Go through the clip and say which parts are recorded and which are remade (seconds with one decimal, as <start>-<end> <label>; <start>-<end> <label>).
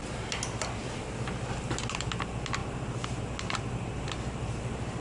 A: 0.0-5.0 recorded